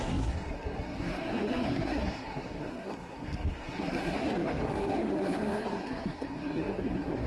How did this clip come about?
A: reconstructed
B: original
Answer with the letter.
A